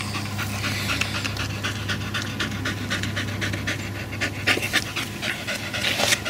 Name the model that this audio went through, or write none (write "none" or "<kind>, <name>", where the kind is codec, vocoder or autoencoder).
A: none